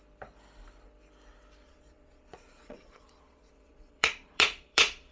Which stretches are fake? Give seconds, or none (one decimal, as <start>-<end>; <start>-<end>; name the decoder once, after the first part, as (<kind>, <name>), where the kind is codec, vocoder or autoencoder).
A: 1.6-5.1 (vocoder, Vocos)